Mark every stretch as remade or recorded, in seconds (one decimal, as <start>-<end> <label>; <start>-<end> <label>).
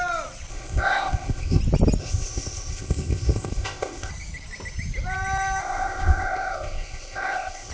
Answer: 0.0-0.5 recorded; 0.5-1.6 remade; 1.6-2.0 recorded; 2.0-4.1 remade; 4.1-5.6 recorded; 5.6-7.7 remade